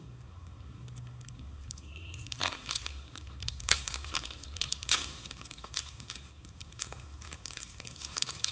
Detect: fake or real fake